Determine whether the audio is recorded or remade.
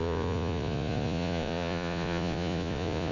remade